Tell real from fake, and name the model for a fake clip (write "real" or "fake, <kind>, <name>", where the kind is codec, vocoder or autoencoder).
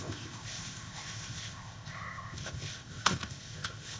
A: fake, codec, ZipCodec